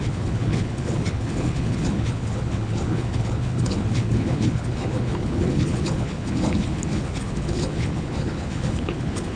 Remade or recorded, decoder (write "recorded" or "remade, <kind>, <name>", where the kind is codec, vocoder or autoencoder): remade, codec, HILCodec